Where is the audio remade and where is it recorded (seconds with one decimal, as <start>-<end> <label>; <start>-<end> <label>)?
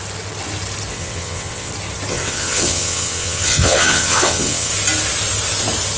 0.0-0.9 recorded; 0.9-1.7 remade; 1.7-2.1 recorded; 2.1-4.7 remade; 4.7-6.0 recorded